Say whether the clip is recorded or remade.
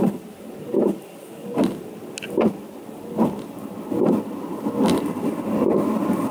recorded